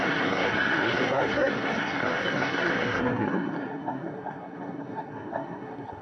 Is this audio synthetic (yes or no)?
yes